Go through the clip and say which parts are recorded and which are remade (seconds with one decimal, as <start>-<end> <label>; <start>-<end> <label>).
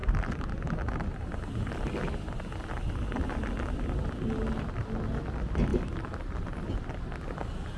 0.0-7.8 recorded